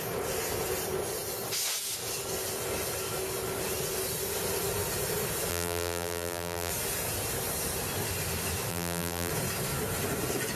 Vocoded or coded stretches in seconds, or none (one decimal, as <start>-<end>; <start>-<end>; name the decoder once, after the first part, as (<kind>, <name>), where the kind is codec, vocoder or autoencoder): 5.5-6.7 (vocoder, BigVGAN v2); 8.7-9.3